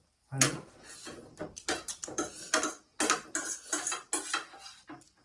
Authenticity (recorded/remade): recorded